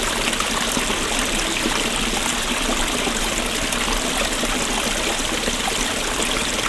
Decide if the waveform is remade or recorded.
recorded